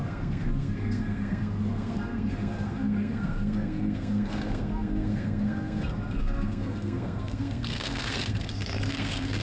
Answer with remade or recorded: remade